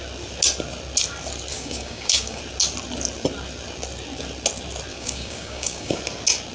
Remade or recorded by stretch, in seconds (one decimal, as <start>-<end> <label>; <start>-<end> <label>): 0.0-1.5 recorded; 1.5-2.4 remade; 2.4-4.9 recorded; 4.9-6.0 remade; 6.0-6.5 recorded